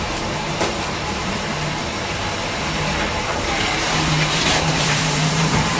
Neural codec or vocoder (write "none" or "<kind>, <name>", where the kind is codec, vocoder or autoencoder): vocoder, BigVGAN v2